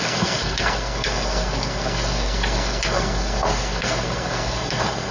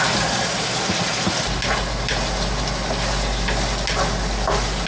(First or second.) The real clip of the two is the second